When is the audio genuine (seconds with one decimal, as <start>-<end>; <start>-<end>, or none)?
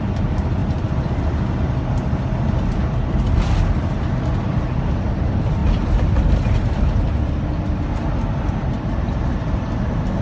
0.0-10.2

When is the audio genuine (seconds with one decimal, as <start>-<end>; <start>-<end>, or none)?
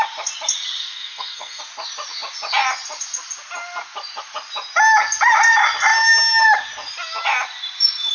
0.0-0.8; 1.6-8.1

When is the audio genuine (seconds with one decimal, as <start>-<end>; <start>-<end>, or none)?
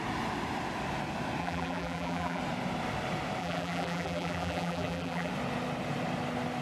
0.0-1.4; 2.4-3.4; 5.3-6.6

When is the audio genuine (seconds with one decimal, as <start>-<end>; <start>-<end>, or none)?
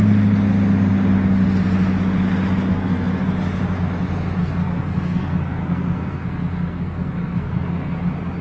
0.0-2.7; 3.2-4.4; 8.0-8.4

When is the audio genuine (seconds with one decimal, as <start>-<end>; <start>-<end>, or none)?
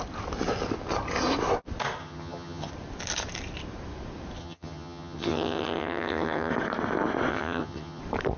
0.0-2.0; 2.7-4.4; 6.5-7.3; 8.0-8.4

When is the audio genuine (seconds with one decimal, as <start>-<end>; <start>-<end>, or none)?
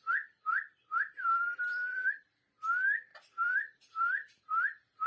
0.0-0.5; 2.5-3.1; 4.4-5.1